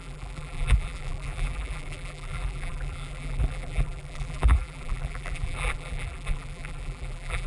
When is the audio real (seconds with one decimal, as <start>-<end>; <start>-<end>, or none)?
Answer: none